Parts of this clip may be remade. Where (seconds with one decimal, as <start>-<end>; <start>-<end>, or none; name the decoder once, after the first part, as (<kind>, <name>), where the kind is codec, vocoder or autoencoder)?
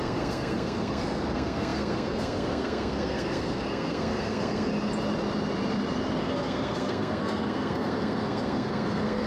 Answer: 0.0-4.7 (codec, SNAC); 6.2-9.3